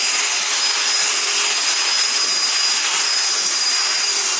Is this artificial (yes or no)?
no